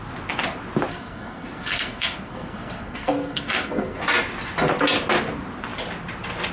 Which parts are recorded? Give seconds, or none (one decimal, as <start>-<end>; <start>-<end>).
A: 0.0-0.9; 4.0-6.5